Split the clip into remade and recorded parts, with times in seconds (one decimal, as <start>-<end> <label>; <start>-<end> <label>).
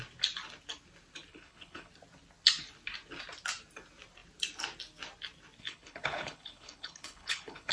0.0-1.3 recorded; 1.3-1.9 remade; 1.9-5.6 recorded; 5.6-7.7 remade